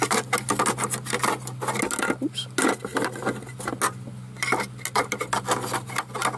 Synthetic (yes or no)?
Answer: no